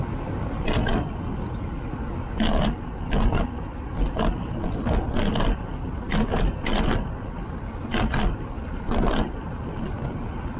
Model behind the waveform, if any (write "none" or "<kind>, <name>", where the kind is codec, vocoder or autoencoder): none